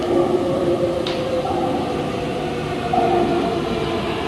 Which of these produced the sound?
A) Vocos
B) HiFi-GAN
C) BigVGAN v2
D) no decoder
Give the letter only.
D